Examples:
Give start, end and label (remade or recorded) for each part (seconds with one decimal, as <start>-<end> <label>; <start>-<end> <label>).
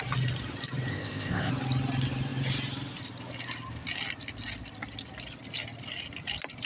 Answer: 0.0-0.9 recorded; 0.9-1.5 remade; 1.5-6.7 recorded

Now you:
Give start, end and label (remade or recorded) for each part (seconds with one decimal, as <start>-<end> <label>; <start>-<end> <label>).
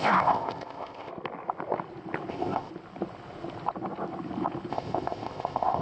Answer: 0.0-1.1 remade; 1.1-2.3 recorded; 2.3-2.7 remade; 2.7-4.7 recorded; 4.7-5.8 remade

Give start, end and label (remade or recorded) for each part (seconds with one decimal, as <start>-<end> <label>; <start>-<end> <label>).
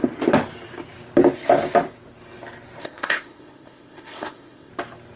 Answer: 0.0-2.8 recorded; 2.8-4.7 remade; 4.7-5.2 recorded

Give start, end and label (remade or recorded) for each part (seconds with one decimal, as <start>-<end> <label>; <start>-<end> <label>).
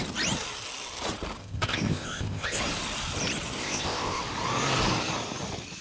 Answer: 0.0-1.4 recorded; 1.4-2.6 remade; 2.6-3.6 recorded; 3.6-4.2 remade; 4.2-5.8 recorded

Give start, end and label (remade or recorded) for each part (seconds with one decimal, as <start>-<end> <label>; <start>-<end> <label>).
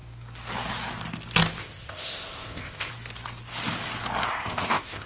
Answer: 0.0-1.6 recorded; 1.6-2.9 remade; 2.9-4.3 recorded; 4.3-5.1 remade